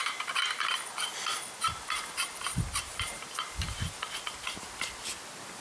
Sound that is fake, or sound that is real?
real